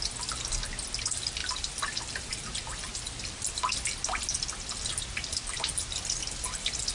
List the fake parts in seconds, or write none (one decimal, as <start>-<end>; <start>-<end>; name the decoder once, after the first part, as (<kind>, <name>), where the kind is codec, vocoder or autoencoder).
1.4-2.3 (vocoder, BigVGAN v2); 6.2-6.9